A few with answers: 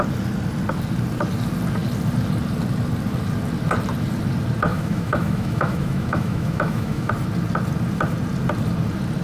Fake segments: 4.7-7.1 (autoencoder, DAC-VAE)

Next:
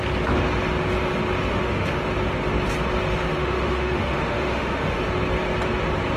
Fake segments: 1.5-2.0 (autoencoder, DAC-VAE); 3.3-5.0

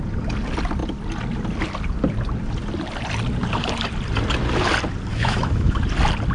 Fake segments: 5.1-5.8 (autoencoder, DAC-VAE)

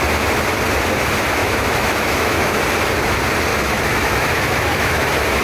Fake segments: 1.4-2.6 (autoencoder, DAC-VAE); 3.5-5.0

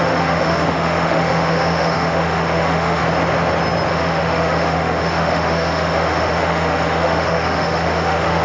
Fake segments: 0.0-3.0 (autoencoder, DAC-VAE); 3.9-8.4

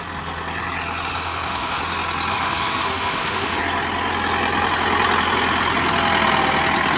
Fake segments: 1.1-1.8 (autoencoder, DAC-VAE); 2.3-3.6

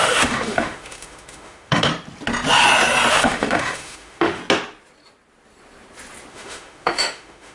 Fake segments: 0.0-1.9 (autoencoder, DAC-VAE); 3.1-4.4; 6.3-7.5

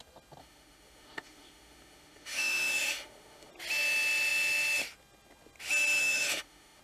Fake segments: 0.4-3.5 (autoencoder, DAC-VAE); 6.0-6.8